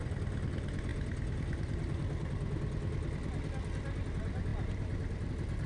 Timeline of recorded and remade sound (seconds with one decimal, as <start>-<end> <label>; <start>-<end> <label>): 0.0-5.7 recorded